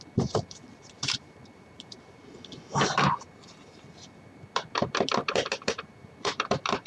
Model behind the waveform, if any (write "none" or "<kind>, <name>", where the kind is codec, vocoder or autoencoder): vocoder, BigVGAN v2